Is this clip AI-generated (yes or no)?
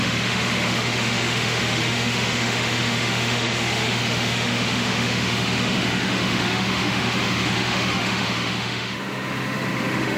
yes